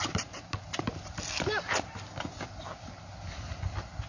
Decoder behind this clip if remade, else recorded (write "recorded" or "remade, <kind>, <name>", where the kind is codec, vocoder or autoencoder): recorded